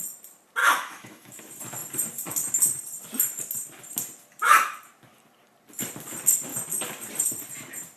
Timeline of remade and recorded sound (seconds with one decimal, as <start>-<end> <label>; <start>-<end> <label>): 0.0-0.6 recorded; 0.6-1.4 remade; 1.4-8.0 recorded